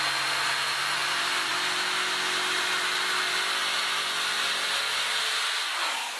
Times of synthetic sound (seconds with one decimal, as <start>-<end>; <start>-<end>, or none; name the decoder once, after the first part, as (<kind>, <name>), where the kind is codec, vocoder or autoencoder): none